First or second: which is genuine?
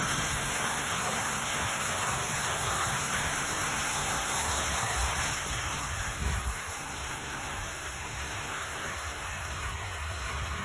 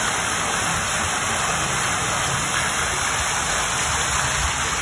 second